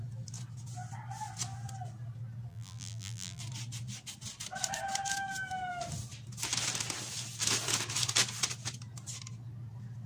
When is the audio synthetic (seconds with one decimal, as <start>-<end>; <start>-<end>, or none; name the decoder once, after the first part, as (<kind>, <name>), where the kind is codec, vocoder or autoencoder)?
2.5-3.4 (vocoder, BigVGAN v2)